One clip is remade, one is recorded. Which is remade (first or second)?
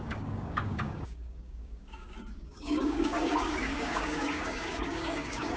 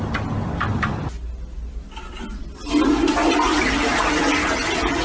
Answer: first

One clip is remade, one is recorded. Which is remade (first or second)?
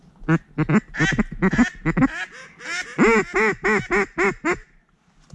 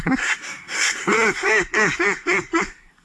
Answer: second